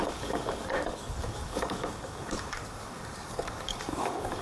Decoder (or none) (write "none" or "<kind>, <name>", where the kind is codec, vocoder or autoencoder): codec, DAC